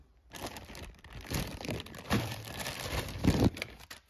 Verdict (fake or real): fake